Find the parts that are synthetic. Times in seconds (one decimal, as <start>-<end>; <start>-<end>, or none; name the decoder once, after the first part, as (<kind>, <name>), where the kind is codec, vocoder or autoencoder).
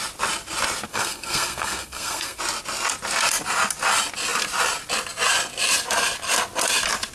0.9-2.4 (codec, SNAC)